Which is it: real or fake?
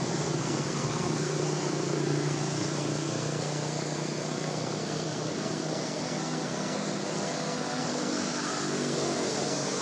fake